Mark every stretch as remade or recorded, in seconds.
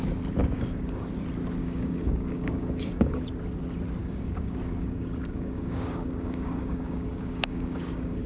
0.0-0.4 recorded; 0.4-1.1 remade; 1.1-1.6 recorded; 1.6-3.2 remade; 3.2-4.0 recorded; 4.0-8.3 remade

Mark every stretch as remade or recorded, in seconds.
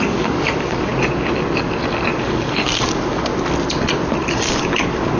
0.0-0.9 remade; 0.9-2.2 recorded; 2.2-3.3 remade; 3.3-4.2 recorded; 4.2-5.2 remade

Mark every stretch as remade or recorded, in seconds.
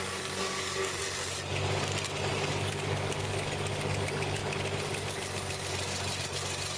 0.0-1.0 remade; 1.0-2.3 recorded; 2.3-4.4 remade; 4.4-6.8 recorded